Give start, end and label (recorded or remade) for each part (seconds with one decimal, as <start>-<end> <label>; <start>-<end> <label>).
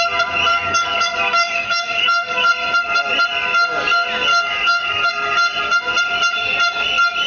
0.0-0.5 recorded; 0.5-2.5 remade; 2.5-4.3 recorded; 4.3-5.1 remade; 5.1-7.3 recorded